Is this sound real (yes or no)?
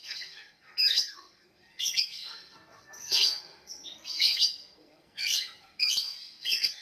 no